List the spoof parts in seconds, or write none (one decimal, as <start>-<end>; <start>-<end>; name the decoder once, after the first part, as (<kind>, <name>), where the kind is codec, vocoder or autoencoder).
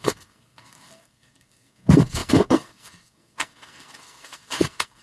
0.0-5.0 (codec, SNAC)